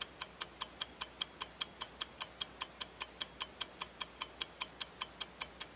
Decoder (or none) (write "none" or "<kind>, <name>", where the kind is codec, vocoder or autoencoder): none